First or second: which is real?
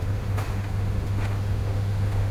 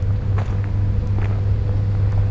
second